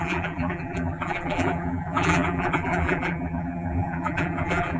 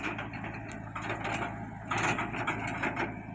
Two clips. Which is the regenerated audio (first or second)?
first